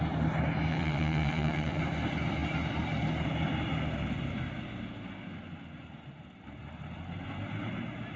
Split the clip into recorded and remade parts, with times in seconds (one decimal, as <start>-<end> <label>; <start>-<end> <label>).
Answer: 0.0-0.7 recorded; 0.7-1.8 remade; 1.8-8.2 recorded